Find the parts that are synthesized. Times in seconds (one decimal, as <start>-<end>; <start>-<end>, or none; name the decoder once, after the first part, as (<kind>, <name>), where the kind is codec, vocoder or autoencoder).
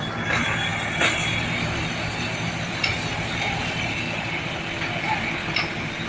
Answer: none